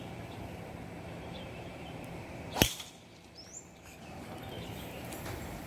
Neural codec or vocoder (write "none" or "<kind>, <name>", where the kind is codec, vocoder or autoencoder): vocoder, BigVGAN v2